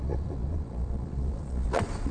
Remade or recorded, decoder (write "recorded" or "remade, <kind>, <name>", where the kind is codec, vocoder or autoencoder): remade, vocoder, Vocos